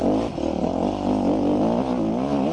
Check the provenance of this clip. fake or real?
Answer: real